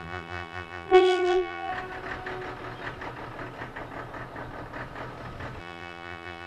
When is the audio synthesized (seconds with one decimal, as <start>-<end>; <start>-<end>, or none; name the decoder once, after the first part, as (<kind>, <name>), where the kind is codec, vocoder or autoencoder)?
0.0-1.7 (vocoder, BigVGAN v2); 5.6-6.5